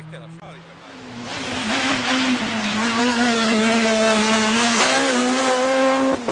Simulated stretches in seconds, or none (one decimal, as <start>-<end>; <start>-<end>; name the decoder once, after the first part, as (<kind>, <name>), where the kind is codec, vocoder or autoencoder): 3.0-4.8 (codec, SNAC)